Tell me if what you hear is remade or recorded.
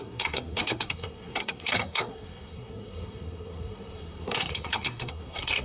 remade